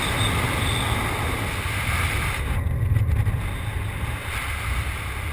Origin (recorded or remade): recorded